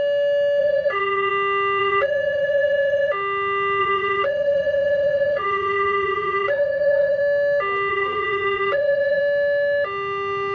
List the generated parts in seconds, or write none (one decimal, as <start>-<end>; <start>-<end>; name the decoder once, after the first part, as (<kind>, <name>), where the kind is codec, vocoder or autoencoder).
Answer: 0.6-1.3 (vocoder, Vocos); 1.8-3.1; 3.8-7.2; 7.9-9.2